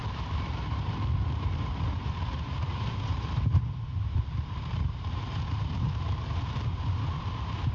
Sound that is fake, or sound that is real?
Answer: fake